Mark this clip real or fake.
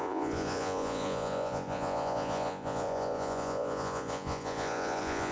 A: fake